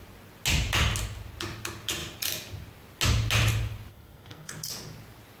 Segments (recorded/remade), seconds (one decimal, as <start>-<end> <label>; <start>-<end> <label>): 0.0-3.9 recorded; 3.9-4.7 remade; 4.7-5.4 recorded